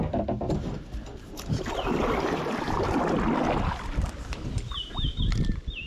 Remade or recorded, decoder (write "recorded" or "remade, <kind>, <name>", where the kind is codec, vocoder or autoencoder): recorded